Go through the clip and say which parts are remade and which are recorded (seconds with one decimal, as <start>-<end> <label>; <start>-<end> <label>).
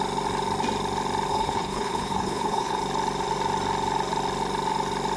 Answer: 0.0-1.3 recorded; 1.3-2.8 remade; 2.8-5.2 recorded